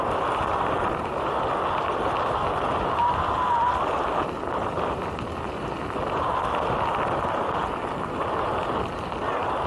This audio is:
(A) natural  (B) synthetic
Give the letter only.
A